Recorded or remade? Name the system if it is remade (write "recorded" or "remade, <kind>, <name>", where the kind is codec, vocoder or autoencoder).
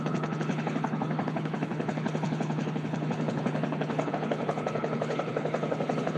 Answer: remade, codec, HILCodec